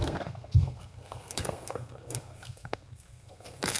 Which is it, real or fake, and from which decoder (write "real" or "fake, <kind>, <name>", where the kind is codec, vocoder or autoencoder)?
fake, codec, SNAC